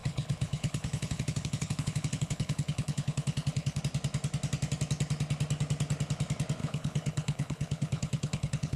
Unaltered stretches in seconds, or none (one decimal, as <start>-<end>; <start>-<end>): 3.8-6.6